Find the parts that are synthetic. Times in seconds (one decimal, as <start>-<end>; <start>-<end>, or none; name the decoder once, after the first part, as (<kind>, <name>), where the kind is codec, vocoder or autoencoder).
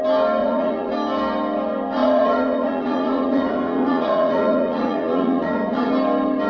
0.4-0.9 (vocoder, Vocos); 2.0-5.9